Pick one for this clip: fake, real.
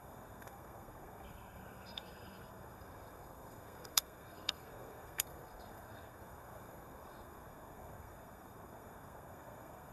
fake